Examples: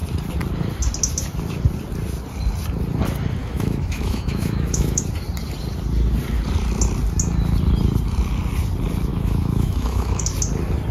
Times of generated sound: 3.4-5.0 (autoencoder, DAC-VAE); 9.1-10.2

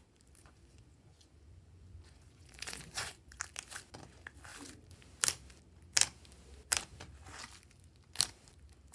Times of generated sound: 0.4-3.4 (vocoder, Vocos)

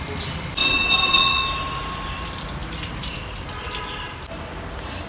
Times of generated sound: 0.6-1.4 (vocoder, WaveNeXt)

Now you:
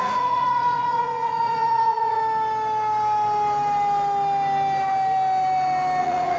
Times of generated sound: 0.0-2.2 (vocoder, Vocos); 6.0-6.4

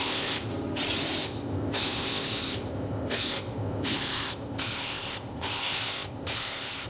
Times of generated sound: 0.0-0.5 (codec, ZipCodec); 1.2-6.9

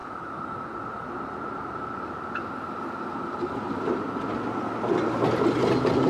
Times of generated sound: 0.0-3.7 (vocoder, BigVGAN v2)

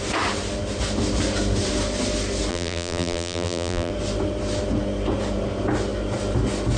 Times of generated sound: 2.5-3.9 (vocoder, BigVGAN v2)

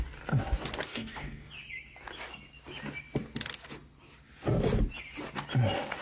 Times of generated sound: 0.9-1.5 (codec, DAC)